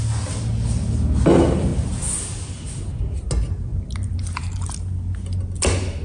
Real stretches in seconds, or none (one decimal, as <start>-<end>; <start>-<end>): 0.0-6.0